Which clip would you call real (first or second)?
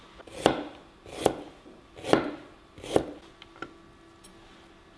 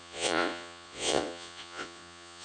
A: first